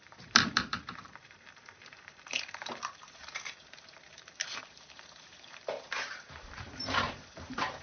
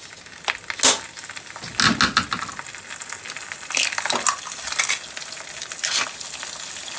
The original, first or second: second